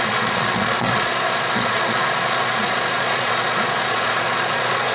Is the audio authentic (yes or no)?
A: no